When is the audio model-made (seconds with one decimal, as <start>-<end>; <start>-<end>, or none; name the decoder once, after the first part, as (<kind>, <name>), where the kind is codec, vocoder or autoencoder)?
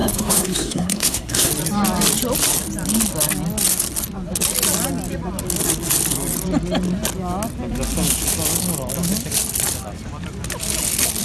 0.0-1.5 (codec, SNAC)